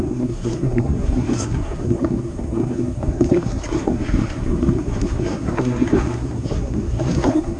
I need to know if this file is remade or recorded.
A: remade